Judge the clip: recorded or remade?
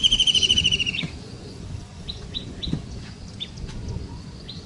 remade